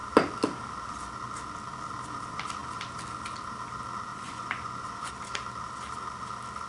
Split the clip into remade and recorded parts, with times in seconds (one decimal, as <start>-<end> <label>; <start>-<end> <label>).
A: 0.0-4.1 recorded; 4.1-5.1 remade; 5.1-6.7 recorded